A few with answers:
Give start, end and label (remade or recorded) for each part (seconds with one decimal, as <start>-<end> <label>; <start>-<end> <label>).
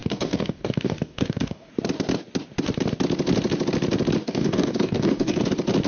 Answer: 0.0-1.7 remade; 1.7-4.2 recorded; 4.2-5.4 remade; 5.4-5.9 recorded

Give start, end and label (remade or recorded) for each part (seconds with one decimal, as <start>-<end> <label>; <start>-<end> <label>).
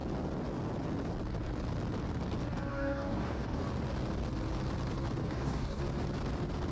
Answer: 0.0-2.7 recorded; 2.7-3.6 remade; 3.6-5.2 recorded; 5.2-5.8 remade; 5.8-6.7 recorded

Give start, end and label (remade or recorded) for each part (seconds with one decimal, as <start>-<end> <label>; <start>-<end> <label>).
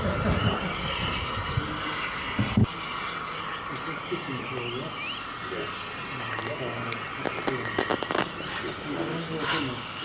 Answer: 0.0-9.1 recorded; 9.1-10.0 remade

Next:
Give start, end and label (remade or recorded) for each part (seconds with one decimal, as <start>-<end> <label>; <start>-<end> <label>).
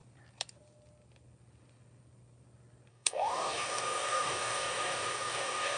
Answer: 0.0-2.9 recorded; 2.9-5.8 remade